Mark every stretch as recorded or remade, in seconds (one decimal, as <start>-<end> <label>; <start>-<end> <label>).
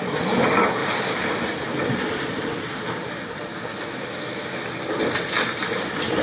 0.0-3.7 recorded; 3.7-4.6 remade; 4.6-6.2 recorded